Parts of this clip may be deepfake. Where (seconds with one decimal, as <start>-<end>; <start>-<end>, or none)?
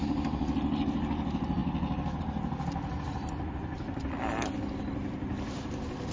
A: none